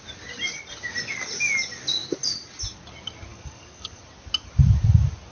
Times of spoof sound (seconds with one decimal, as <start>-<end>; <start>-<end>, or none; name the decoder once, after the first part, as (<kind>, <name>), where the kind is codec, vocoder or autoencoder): 3.3-4.0 (codec, DAC)